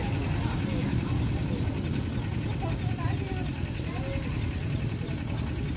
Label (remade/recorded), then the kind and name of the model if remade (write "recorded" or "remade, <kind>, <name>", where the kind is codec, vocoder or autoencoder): recorded